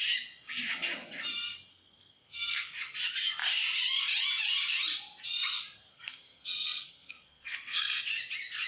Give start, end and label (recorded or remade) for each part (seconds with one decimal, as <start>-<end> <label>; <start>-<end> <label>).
0.0-1.7 recorded; 1.7-2.7 remade; 2.7-5.9 recorded; 5.9-8.0 remade; 8.0-8.7 recorded